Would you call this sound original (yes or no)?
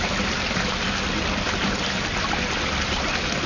yes